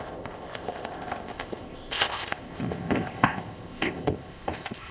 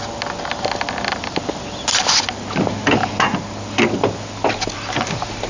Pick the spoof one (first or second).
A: first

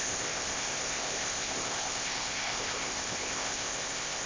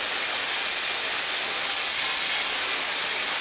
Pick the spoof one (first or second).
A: first